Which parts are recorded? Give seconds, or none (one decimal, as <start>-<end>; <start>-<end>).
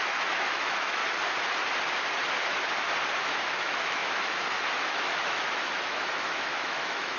1.0-3.2